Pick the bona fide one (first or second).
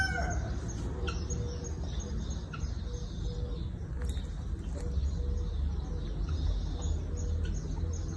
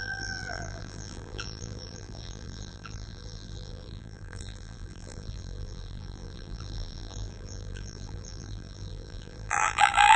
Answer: first